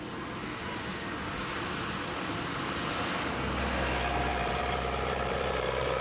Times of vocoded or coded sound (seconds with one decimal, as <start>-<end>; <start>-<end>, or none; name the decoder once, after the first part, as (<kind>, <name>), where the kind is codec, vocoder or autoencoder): 4.3-6.0 (vocoder, BigVGAN v2)